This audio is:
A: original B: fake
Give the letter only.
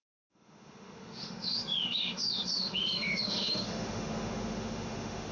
B